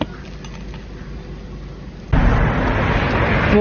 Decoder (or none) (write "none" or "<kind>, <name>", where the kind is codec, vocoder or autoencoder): none